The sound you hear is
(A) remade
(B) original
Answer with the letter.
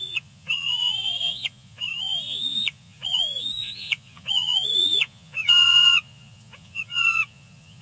A